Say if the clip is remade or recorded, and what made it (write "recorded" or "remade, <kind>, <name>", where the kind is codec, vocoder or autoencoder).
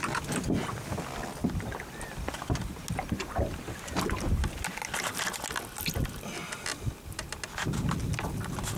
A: recorded